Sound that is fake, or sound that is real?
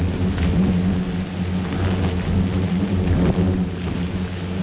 real